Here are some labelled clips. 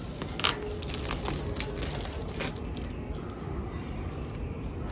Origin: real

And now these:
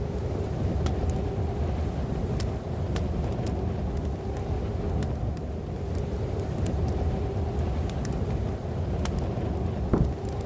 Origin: real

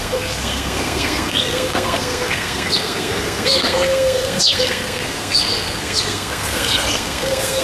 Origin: fake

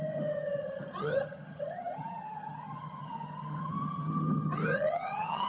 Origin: fake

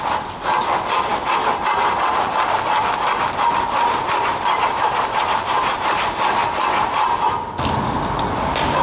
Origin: real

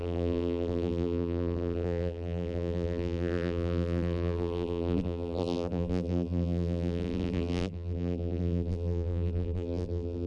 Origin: fake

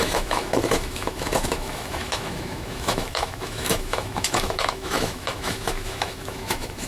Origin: fake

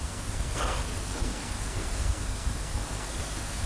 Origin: fake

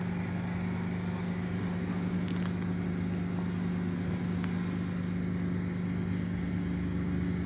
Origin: real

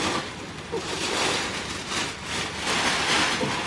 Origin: real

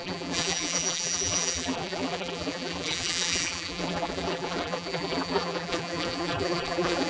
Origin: fake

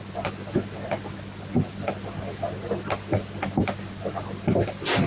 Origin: real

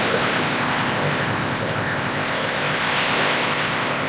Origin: fake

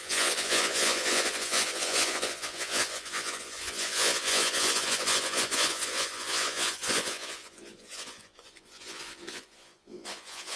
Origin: fake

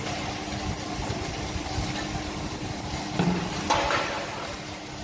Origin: real